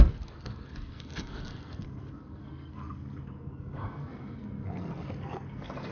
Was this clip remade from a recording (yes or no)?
yes